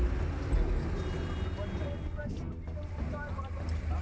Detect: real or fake real